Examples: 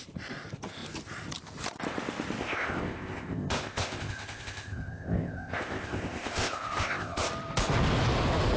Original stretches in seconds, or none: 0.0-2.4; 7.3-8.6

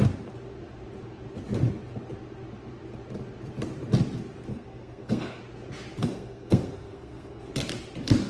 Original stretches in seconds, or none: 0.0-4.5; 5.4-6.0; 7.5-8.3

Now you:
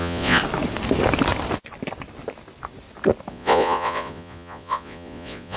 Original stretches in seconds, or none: 0.4-3.3

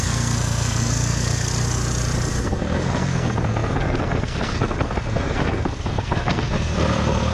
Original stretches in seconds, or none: 1.5-2.3